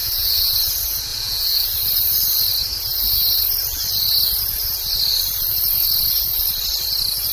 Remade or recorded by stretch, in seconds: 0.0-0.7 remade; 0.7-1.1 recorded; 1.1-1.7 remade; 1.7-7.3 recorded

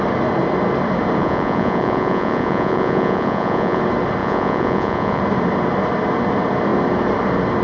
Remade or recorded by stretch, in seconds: 0.0-1.2 recorded; 1.2-3.8 remade; 3.8-4.2 recorded; 4.2-5.2 remade; 5.2-7.6 recorded